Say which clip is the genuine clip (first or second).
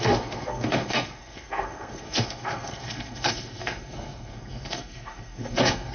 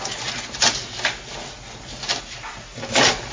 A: second